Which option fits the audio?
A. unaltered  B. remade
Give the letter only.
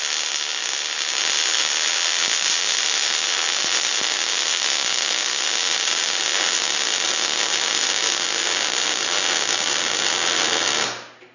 A